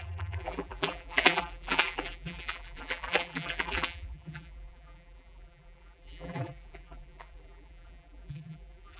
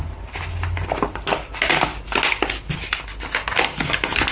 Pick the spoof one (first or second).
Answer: first